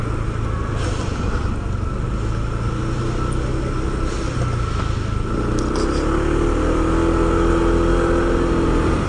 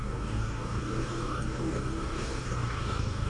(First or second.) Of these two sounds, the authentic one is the first